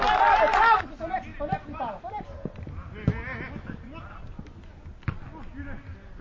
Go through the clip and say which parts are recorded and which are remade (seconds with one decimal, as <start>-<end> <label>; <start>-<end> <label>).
0.0-6.2 recorded